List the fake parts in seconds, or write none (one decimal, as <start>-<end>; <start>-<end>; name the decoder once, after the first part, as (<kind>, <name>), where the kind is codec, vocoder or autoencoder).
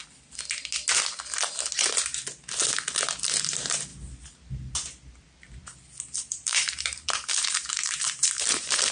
3.2-3.9 (vocoder, BigVGAN v2); 6.0-8.9